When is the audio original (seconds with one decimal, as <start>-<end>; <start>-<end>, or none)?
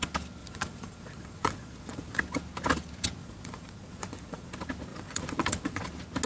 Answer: 0.0-0.4; 2.2-3.2; 4.5-4.9; 5.8-6.3